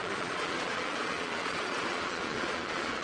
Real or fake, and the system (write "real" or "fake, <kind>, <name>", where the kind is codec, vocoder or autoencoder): fake, vocoder, Vocos